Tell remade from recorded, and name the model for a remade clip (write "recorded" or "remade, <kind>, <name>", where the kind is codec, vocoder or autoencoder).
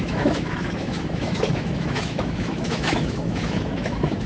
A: remade, autoencoder, DAC-VAE